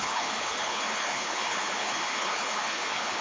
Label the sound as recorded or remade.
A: remade